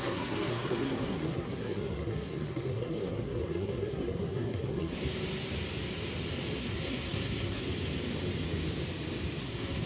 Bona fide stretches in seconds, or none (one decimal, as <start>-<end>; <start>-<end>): 5.0-6.6; 7.6-9.4